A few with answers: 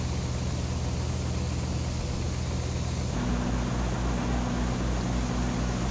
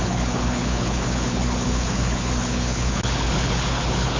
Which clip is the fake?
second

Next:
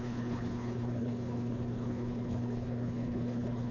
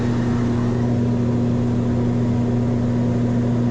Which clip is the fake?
first